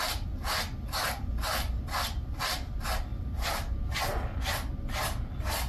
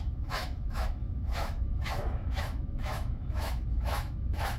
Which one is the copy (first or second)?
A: second